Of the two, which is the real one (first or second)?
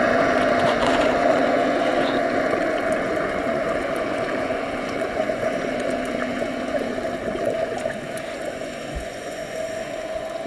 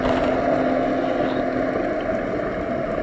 second